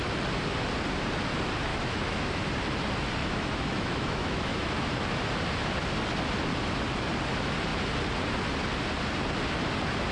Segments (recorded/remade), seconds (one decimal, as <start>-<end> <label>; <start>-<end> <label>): 0.0-1.7 recorded; 1.7-2.4 remade; 2.4-3.2 recorded; 3.2-4.9 remade; 4.9-10.1 recorded